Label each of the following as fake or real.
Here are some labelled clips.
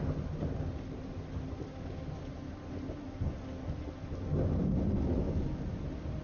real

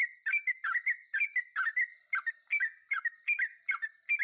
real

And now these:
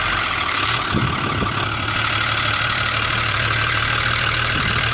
fake